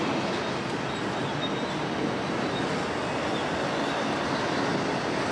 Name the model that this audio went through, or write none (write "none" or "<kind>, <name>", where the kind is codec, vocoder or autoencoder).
none